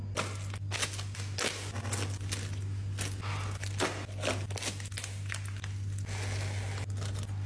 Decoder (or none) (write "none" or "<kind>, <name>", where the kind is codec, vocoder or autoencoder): none